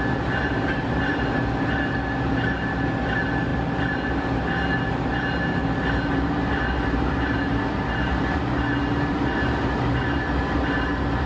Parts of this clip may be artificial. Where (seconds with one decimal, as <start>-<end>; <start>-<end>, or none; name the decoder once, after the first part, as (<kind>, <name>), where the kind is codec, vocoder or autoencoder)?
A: 0.0-11.3 (vocoder, BigVGAN v2)